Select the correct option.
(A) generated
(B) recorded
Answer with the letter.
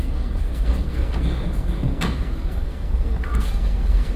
A